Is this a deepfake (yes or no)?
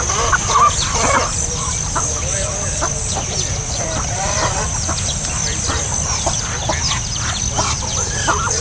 no